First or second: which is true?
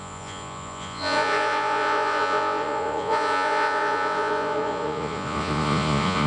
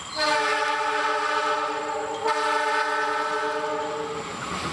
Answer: second